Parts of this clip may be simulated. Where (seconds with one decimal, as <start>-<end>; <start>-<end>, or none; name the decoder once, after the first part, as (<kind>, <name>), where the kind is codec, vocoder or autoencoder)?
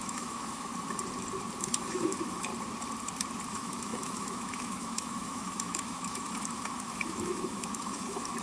0.0-0.7 (autoencoder, DAC-VAE); 1.6-2.5; 3.5-8.4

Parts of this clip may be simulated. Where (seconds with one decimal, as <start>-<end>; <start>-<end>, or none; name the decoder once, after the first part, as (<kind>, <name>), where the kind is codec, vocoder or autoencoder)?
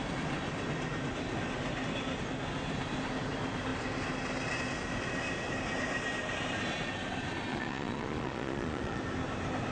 7.5-9.0 (vocoder, Vocos)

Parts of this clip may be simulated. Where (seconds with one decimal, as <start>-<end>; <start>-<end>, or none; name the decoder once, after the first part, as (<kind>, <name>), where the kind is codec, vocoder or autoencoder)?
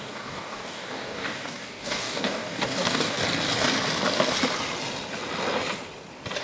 0.0-3.2 (codec, DAC)